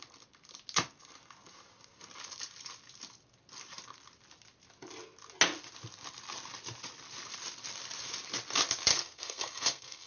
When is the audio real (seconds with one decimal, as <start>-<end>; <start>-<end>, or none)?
0.0-8.9